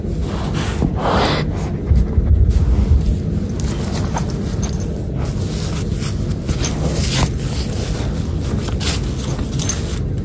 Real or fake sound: real